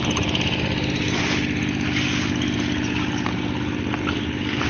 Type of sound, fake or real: real